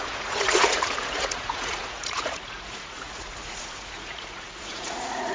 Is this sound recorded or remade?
remade